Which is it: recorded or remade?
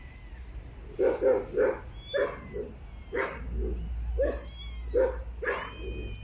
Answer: recorded